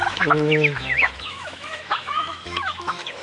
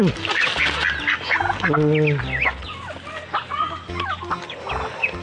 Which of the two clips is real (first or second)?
second